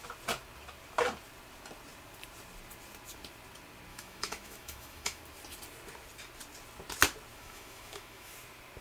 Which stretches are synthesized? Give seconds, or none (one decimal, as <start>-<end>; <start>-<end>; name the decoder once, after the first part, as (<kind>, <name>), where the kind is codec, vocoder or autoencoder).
3.9-5.2 (autoencoder, DAC-VAE); 7.3-8.3